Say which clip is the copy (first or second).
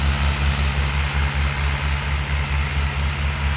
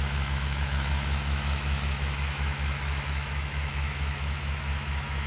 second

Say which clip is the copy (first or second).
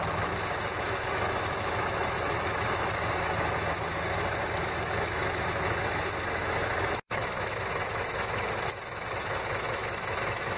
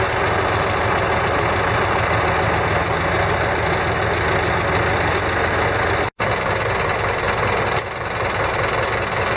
first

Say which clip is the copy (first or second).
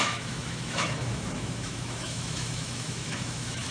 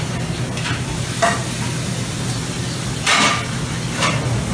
first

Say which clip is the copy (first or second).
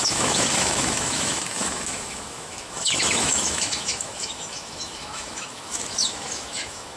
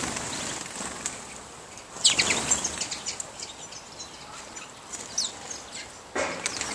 first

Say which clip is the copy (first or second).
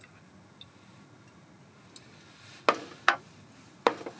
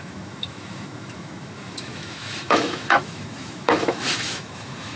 second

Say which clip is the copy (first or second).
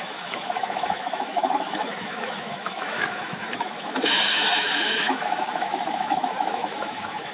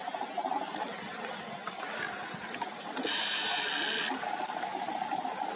first